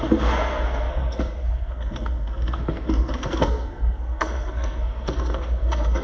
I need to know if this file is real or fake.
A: fake